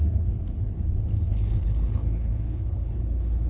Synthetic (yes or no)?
yes